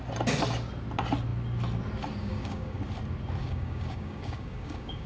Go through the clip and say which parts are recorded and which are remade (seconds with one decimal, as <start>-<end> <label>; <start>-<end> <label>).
0.0-2.2 recorded; 2.2-2.8 remade; 2.8-3.4 recorded; 3.4-5.1 remade